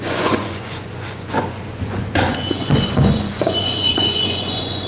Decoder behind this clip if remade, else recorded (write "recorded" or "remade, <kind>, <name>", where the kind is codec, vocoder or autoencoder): remade, vocoder, Vocos